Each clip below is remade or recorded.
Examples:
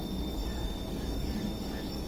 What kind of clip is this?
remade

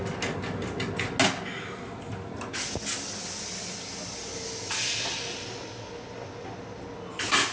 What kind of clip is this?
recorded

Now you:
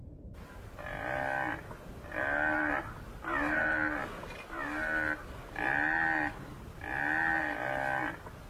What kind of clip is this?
recorded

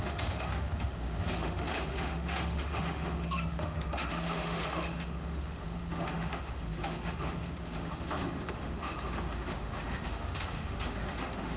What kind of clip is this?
remade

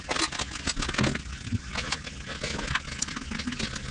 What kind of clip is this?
recorded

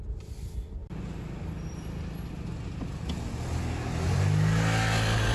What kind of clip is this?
recorded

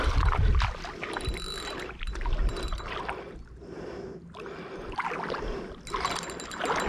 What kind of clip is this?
recorded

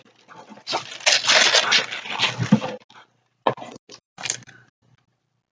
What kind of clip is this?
recorded